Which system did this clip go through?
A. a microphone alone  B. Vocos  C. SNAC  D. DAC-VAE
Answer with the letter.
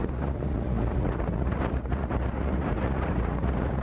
B